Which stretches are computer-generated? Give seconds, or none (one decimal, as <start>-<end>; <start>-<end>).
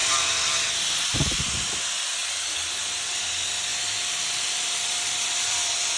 0.0-2.2; 3.2-6.0